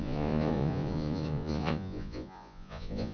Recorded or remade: remade